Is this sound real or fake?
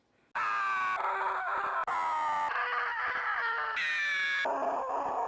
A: real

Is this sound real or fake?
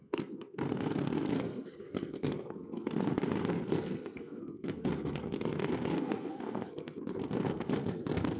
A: fake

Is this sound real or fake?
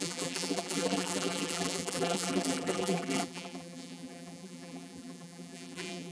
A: fake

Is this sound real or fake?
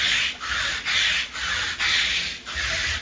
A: real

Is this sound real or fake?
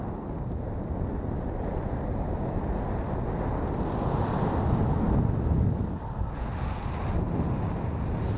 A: real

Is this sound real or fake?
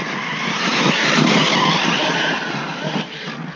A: real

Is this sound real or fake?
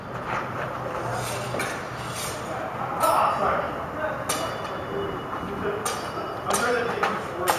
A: real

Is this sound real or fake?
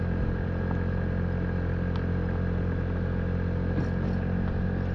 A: real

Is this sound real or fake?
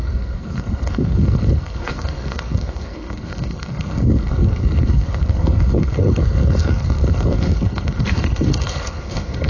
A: fake